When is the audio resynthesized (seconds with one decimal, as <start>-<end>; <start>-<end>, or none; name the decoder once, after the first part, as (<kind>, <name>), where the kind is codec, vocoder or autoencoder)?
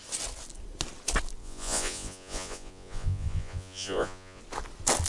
1.4-4.4 (vocoder, Vocos)